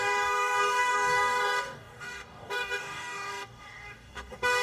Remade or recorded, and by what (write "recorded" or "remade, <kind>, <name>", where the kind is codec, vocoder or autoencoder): remade, codec, DAC